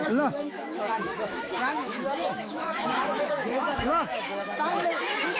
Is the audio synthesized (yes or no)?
yes